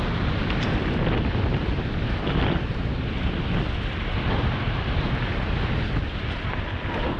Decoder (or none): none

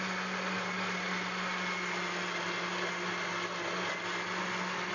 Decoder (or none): none